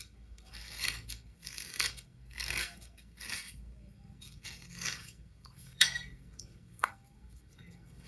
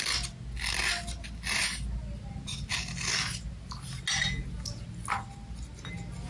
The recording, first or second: second